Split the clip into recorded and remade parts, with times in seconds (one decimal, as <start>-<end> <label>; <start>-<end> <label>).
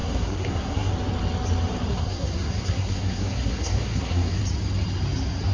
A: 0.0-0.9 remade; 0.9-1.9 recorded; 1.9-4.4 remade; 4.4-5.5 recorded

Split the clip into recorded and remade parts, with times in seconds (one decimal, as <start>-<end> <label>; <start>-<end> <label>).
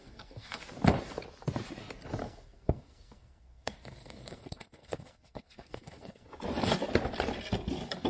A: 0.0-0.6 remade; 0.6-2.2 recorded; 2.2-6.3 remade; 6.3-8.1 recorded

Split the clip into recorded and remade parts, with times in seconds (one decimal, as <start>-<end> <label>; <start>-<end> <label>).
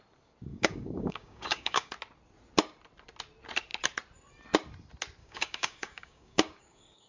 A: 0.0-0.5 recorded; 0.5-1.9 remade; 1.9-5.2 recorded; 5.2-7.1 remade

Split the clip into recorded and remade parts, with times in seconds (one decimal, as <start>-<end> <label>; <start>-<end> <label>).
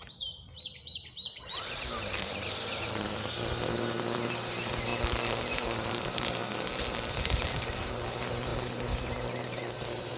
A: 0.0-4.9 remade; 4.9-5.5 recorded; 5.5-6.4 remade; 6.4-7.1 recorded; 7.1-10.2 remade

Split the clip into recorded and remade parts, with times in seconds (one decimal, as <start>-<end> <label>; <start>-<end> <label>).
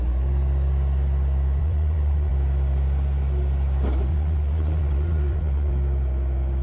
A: 0.0-1.6 recorded; 1.6-2.3 remade; 2.3-4.1 recorded; 4.1-5.7 remade; 5.7-6.6 recorded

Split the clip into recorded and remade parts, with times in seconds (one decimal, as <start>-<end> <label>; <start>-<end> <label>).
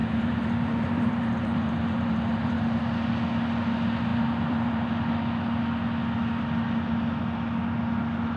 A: 0.0-2.8 remade; 2.8-4.1 recorded; 4.1-4.9 remade; 4.9-8.4 recorded